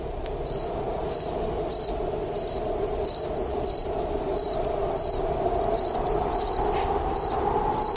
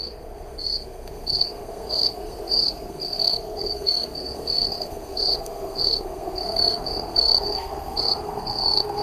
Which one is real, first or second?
first